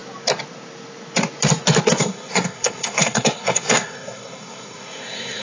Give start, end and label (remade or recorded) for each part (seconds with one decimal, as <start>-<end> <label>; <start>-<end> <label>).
0.0-2.0 recorded; 2.0-5.4 remade